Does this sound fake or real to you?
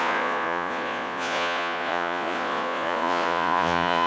fake